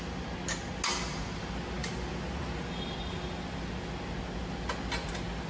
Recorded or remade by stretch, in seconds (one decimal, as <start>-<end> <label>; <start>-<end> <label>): 0.0-5.5 recorded